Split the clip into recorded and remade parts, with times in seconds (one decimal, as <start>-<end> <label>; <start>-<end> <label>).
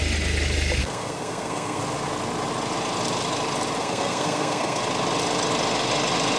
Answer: 0.0-0.8 recorded; 0.8-1.8 remade; 1.8-3.8 recorded; 3.8-4.8 remade; 4.8-6.4 recorded